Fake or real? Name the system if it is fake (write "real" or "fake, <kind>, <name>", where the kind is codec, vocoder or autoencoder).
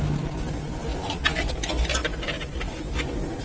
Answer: real